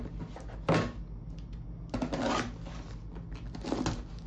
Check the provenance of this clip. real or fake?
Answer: real